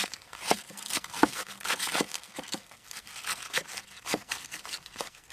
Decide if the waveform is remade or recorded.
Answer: remade